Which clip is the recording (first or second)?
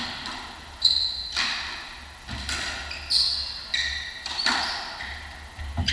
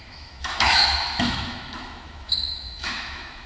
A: first